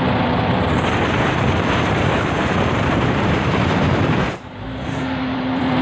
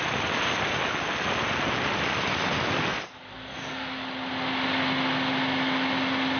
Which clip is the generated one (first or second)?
first